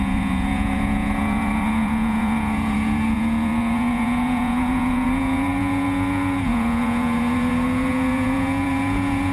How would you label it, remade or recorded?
remade